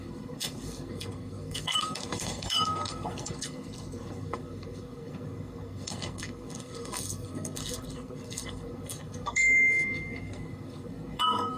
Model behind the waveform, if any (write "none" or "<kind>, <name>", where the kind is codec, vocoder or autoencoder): codec, SNAC